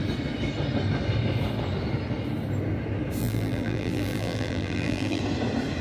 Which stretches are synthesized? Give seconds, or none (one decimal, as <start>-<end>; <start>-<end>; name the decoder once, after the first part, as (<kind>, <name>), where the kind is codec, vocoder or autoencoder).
3.2-5.2 (vocoder, BigVGAN v2)

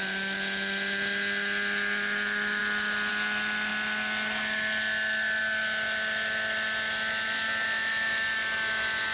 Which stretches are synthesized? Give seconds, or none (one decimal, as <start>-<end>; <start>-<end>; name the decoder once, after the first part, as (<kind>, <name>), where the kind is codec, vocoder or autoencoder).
none

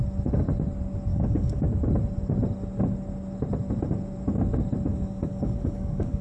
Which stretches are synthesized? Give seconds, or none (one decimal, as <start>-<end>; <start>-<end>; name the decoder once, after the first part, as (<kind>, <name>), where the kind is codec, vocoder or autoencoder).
1.1-1.6 (codec, DAC); 4.9-6.2

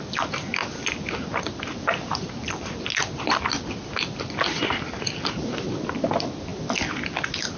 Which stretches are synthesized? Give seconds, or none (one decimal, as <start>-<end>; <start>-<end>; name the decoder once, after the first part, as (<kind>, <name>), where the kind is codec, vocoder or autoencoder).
none

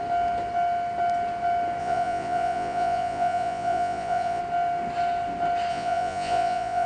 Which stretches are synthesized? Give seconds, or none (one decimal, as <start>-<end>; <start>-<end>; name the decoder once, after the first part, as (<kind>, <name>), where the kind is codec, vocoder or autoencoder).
1.8-4.4 (vocoder, Vocos); 5.7-6.9